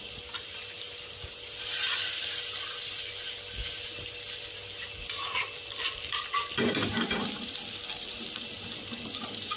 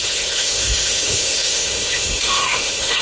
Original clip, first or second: first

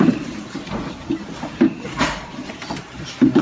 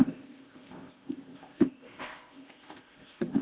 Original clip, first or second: first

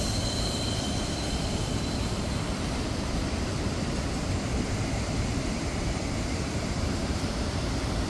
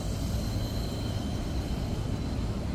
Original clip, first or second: second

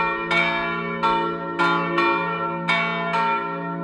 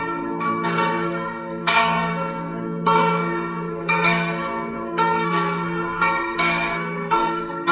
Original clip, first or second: first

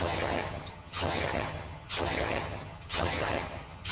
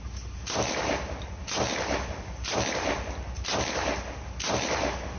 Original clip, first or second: second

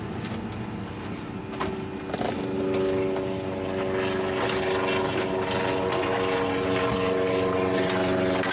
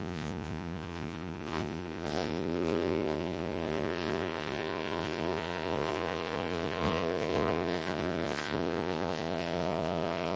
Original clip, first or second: first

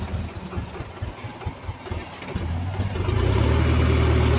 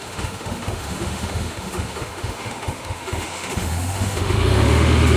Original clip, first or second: first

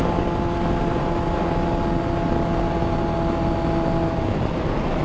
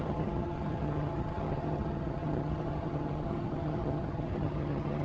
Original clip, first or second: first